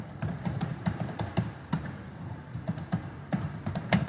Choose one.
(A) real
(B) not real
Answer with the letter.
B